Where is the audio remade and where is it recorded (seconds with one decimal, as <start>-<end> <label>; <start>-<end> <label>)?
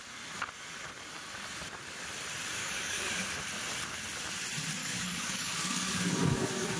0.0-2.6 recorded; 2.6-3.2 remade; 3.2-4.8 recorded; 4.8-6.8 remade